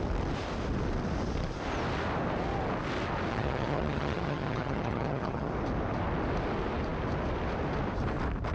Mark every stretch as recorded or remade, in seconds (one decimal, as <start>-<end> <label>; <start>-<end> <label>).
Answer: 0.0-3.3 recorded; 3.3-5.5 remade; 5.5-8.5 recorded